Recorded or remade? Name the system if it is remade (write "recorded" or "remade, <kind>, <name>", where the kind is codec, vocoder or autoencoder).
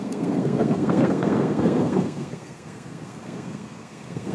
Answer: remade, codec, SNAC